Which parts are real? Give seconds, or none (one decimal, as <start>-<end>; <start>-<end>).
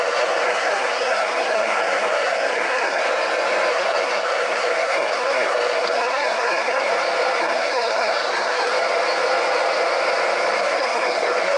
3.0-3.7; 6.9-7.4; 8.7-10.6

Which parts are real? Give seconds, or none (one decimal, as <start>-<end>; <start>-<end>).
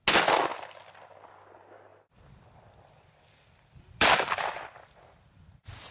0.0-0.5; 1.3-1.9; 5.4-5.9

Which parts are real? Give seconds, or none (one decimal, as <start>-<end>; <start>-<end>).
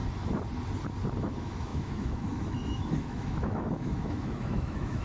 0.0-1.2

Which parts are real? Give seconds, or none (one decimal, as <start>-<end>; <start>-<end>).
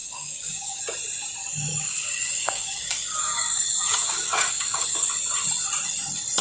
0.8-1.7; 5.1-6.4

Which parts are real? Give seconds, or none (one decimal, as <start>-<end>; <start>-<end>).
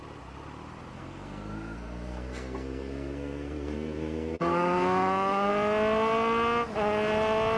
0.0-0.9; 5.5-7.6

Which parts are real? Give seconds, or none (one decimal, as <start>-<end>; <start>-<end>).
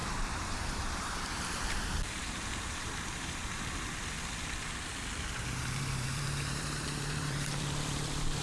3.4-5.3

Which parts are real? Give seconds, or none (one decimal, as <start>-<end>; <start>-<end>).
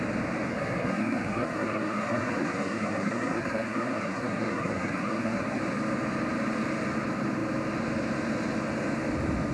0.0-0.5; 5.6-9.5